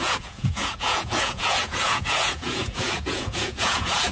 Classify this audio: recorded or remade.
remade